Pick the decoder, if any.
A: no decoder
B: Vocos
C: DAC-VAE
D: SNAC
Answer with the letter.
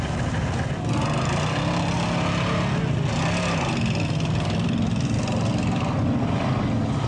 A